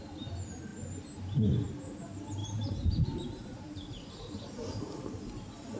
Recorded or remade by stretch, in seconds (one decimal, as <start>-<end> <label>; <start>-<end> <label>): 0.0-2.4 recorded; 2.4-5.0 remade; 5.0-5.8 recorded